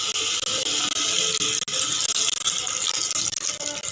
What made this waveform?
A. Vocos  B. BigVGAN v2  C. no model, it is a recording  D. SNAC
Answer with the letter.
C